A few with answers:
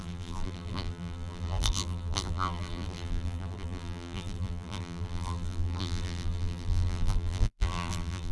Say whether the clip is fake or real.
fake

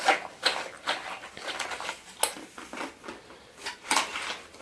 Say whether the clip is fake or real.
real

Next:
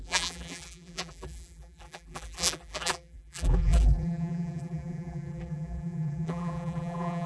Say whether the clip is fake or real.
fake